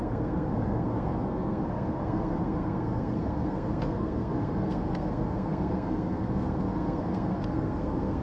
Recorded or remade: remade